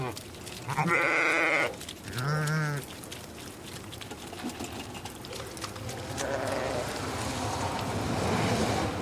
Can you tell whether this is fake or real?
real